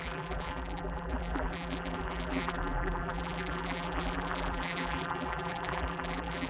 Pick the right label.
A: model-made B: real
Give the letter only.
A